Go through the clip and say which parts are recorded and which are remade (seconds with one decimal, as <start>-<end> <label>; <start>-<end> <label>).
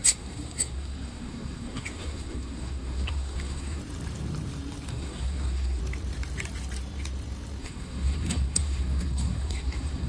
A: 0.0-3.8 remade; 3.8-4.9 recorded; 4.9-5.8 remade; 5.8-7.6 recorded; 7.6-10.1 remade